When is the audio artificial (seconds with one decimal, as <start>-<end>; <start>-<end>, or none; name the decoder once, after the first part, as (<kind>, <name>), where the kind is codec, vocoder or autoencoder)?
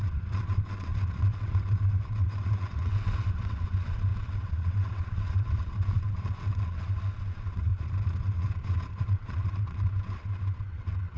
0.0-7.7 (vocoder, WaveNeXt); 8.2-11.2